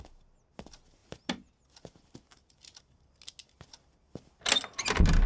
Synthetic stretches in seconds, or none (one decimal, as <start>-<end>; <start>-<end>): none